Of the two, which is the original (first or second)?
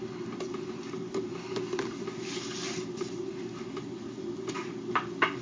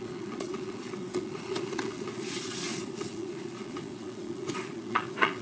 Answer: first